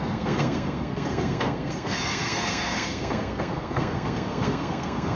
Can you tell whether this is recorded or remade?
remade